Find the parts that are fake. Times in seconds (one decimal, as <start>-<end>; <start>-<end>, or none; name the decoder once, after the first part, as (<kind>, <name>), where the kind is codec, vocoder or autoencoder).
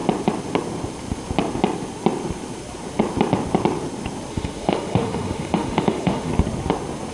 4.3-6.3 (autoencoder, DAC-VAE)